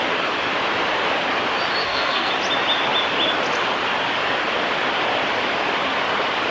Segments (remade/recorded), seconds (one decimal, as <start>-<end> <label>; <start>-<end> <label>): 0.0-1.8 recorded; 1.8-2.3 remade; 2.3-6.5 recorded